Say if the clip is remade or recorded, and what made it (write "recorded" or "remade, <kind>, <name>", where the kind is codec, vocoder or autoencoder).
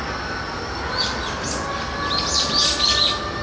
recorded